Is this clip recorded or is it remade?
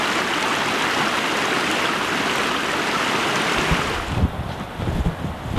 recorded